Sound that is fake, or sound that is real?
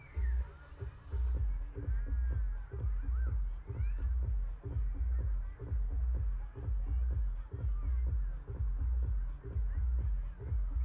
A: real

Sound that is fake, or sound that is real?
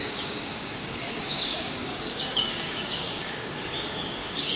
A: fake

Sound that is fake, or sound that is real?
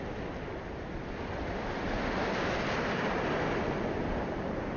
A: real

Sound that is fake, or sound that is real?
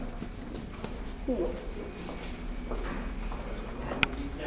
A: real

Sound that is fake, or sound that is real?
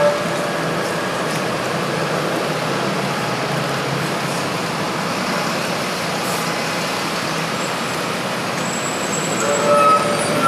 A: real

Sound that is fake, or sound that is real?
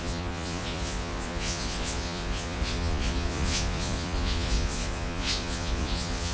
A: fake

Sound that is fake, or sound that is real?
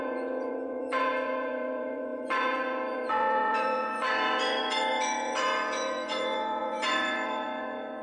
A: fake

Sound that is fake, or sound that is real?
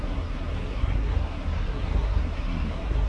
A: fake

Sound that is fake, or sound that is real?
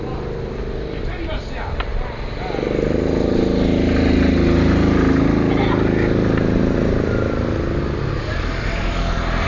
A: real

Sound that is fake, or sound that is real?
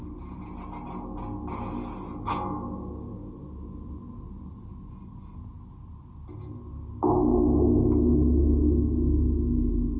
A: real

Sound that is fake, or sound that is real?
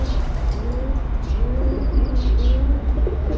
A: real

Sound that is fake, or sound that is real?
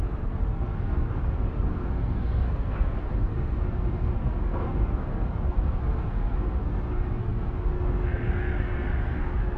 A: fake